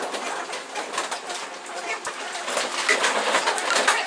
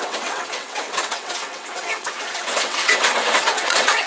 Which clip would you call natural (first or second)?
first